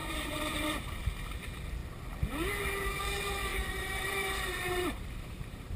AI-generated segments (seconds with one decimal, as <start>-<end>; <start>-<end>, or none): 0.0-1.0; 3.5-5.8